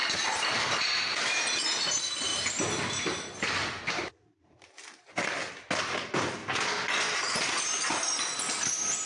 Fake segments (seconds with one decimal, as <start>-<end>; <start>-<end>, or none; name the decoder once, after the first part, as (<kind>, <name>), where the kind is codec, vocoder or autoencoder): 0.0-1.1 (vocoder, BigVGAN v2); 2.3-5.7